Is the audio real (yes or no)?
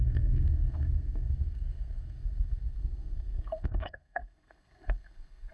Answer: no